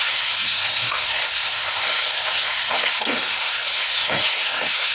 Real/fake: fake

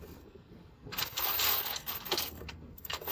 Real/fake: fake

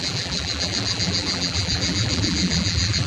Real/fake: fake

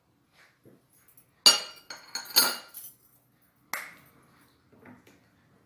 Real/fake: real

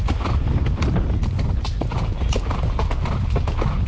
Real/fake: real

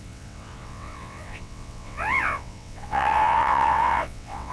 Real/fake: fake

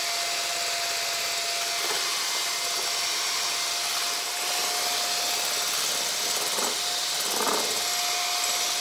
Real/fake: real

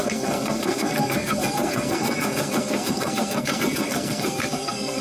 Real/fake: fake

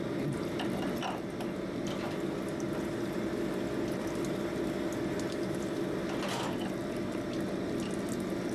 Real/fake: real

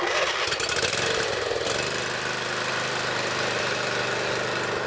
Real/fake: real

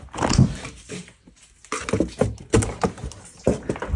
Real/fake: real